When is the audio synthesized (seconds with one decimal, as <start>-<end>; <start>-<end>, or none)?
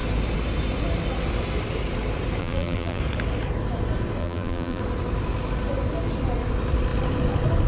2.4-3.0; 4.2-4.8